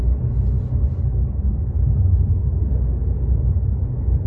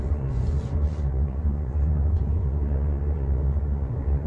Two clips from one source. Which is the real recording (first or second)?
first